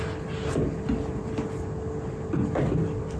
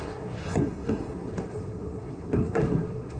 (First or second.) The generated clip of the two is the second